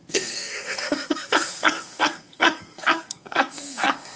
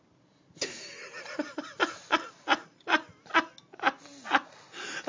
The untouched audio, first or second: second